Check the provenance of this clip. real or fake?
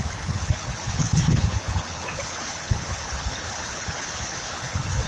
fake